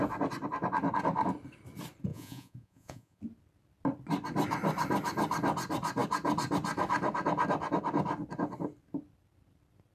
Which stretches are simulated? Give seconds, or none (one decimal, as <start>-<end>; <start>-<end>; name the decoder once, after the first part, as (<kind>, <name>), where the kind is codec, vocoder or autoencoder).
2.1-3.2 (vocoder, Vocos)